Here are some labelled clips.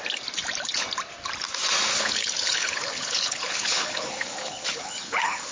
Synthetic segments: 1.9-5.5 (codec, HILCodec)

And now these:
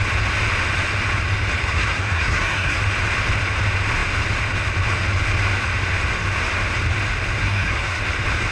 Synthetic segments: 1.6-2.8 (codec, SNAC); 7.4-8.0

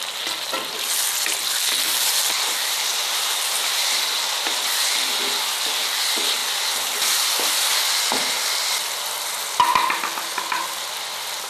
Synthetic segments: 2.0-3.8 (vocoder, BigVGAN v2)

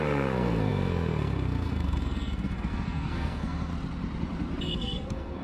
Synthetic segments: 0.0-3.7 (codec, SNAC); 4.6-5.4

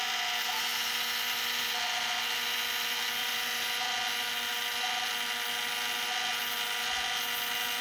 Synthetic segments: none

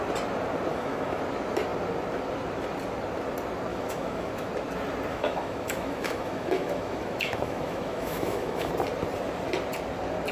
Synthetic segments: 0.7-1.2 (autoencoder, DAC-VAE); 3.7-4.5; 5.1-8.7

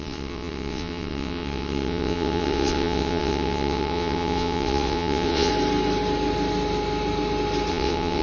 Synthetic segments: 0.0-5.5 (vocoder, WaveNeXt); 7.7-8.2

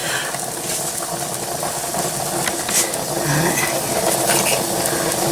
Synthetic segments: none